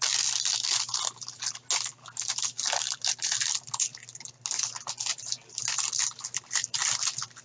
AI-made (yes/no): no